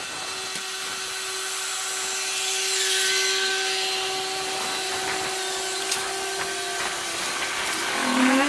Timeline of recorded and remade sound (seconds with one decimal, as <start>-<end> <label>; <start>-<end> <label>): 0.0-8.5 recorded